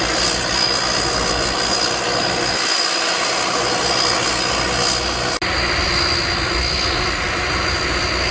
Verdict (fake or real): real